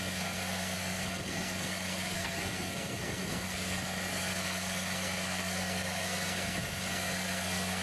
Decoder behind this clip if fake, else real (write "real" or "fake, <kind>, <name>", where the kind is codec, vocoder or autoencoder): fake, codec, SNAC